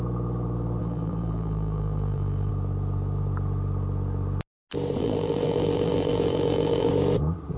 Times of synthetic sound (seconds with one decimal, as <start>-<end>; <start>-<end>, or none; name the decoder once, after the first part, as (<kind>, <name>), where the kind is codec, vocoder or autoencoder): 0.8-2.5 (vocoder, BigVGAN v2); 5.0-6.9